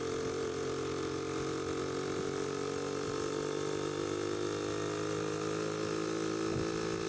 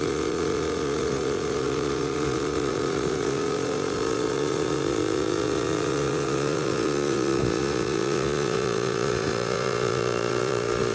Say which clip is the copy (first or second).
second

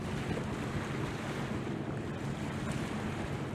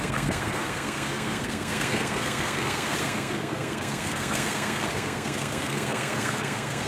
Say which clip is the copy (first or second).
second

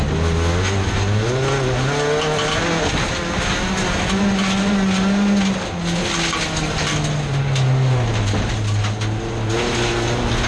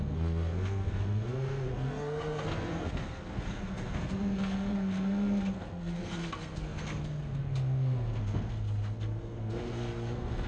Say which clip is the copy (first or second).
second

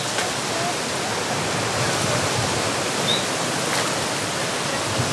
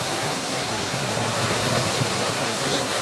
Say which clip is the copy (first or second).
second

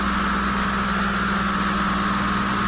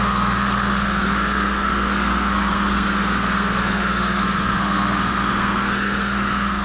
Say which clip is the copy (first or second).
second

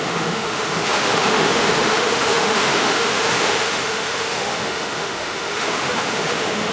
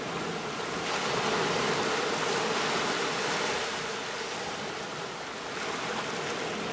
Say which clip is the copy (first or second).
first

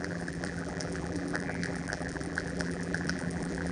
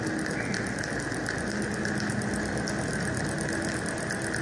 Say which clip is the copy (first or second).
first